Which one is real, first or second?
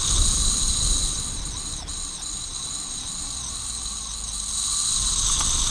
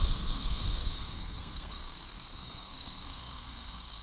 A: first